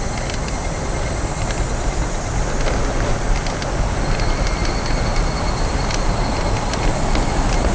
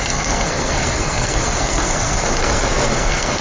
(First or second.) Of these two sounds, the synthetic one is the second